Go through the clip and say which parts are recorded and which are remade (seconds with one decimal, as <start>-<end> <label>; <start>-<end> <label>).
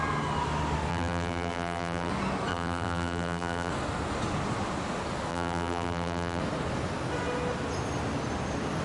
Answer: 0.0-0.9 recorded; 0.9-2.1 remade; 2.1-2.5 recorded; 2.5-3.7 remade; 3.7-5.3 recorded; 5.3-6.4 remade; 6.4-8.8 recorded